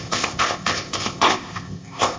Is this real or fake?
fake